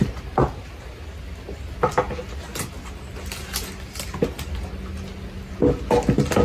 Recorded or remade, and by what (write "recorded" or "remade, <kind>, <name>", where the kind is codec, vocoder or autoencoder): recorded